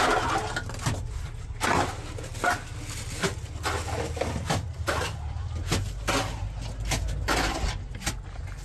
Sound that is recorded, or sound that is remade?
recorded